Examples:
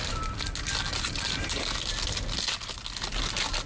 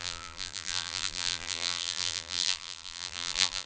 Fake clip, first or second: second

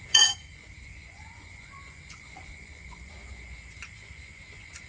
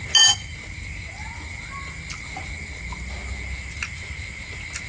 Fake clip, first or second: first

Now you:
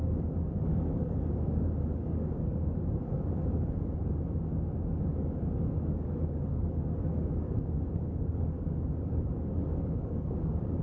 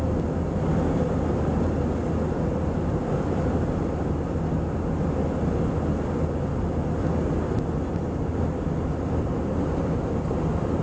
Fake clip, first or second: first